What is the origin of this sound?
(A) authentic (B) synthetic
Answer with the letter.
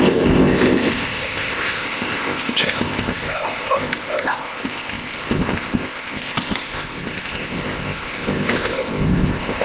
B